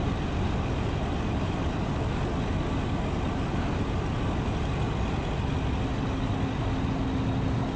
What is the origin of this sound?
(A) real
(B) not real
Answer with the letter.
A